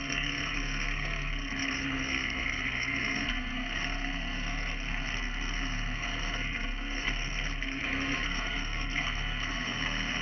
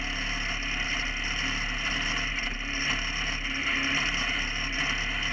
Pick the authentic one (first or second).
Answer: second